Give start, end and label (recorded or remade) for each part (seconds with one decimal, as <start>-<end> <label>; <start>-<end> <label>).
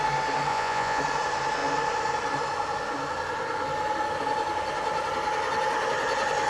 0.0-0.5 recorded; 0.5-1.0 remade; 1.0-6.5 recorded